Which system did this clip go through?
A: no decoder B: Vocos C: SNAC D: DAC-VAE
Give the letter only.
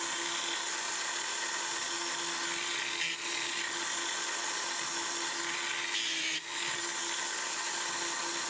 A